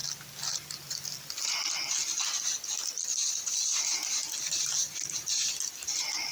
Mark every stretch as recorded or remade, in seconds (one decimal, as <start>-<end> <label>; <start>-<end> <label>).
0.0-6.3 recorded